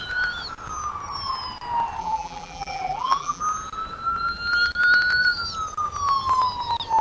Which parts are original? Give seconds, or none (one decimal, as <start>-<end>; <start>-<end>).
0.0-2.0; 3.4-7.0